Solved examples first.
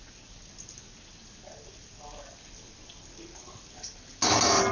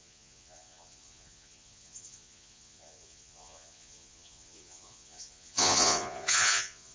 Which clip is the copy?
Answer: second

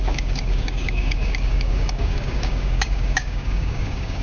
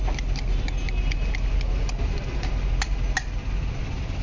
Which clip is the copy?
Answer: first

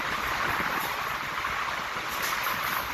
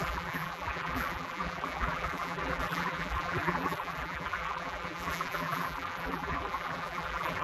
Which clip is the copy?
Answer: second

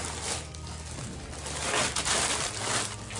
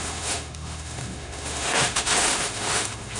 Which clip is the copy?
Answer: second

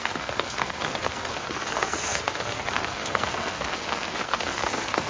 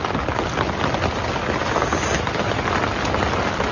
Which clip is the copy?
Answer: first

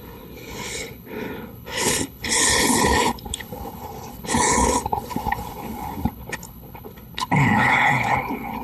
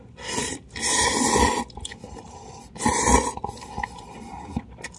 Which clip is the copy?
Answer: first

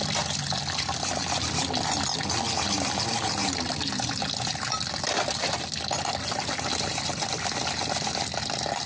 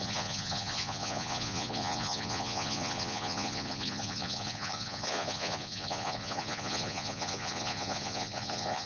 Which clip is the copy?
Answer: second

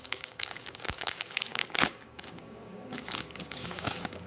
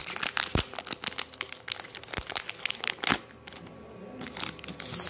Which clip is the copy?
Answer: first